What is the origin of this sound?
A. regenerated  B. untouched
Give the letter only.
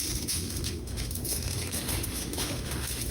A